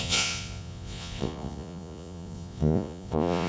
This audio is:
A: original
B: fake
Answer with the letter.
B